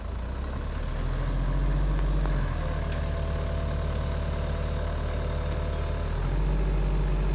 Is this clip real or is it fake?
real